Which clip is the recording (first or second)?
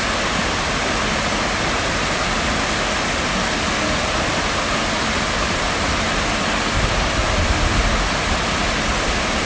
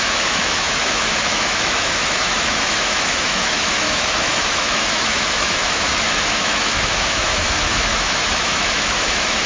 first